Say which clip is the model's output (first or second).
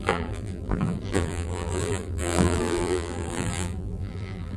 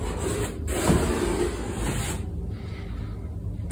first